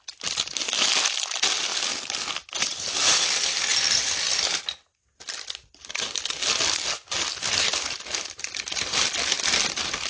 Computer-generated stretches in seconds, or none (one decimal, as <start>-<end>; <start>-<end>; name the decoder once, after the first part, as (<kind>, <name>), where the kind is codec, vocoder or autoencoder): none